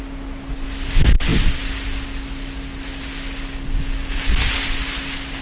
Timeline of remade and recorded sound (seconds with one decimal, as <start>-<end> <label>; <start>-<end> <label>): 0.0-5.4 recorded